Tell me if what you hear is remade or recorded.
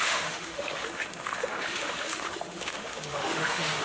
remade